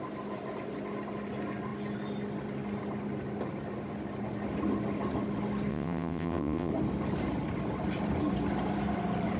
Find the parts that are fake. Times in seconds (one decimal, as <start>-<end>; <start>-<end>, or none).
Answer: 5.7-6.7